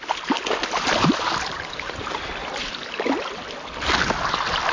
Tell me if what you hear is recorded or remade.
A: recorded